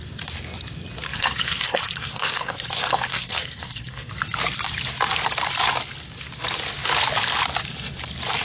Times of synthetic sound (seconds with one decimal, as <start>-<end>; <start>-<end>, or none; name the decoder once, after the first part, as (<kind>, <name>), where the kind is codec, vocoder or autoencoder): 1.1-4.1 (codec, SNAC)